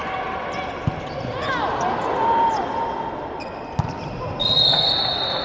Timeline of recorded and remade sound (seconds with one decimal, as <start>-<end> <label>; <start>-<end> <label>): 0.0-4.4 recorded; 4.4-4.9 remade; 4.9-5.4 recorded

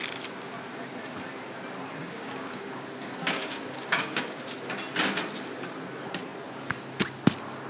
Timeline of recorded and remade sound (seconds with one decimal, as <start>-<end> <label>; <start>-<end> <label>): 0.0-2.0 recorded; 2.0-4.4 remade; 4.4-7.7 recorded

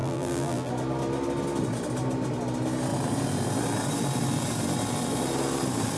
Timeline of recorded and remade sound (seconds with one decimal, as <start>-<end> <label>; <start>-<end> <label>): 0.0-0.7 remade; 0.7-6.0 recorded

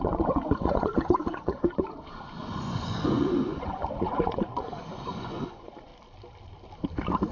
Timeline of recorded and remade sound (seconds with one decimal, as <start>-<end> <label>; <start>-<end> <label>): 0.0-5.9 remade; 5.9-7.3 recorded

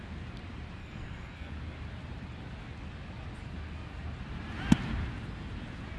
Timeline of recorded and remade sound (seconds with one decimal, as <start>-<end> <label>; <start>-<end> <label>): 0.0-0.8 recorded; 0.8-1.5 remade; 1.5-6.0 recorded

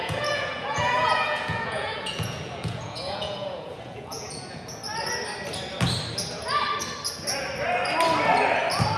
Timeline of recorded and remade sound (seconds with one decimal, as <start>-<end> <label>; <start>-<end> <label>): 0.0-4.8 remade; 4.8-9.0 recorded